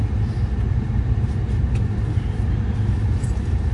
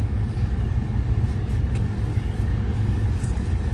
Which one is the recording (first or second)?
first